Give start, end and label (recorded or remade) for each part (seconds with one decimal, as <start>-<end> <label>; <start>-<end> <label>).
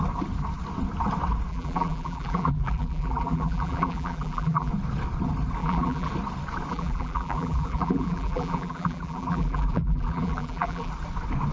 0.0-1.5 recorded; 1.5-4.7 remade; 4.7-5.6 recorded; 5.6-6.1 remade; 6.1-6.7 recorded; 6.7-10.9 remade; 10.9-11.5 recorded